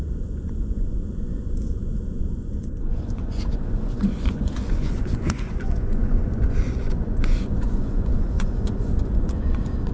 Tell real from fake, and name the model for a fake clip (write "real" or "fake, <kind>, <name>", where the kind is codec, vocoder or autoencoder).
fake, vocoder, Vocos